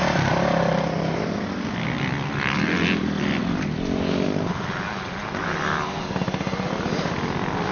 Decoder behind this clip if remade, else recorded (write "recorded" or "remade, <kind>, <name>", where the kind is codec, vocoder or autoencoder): recorded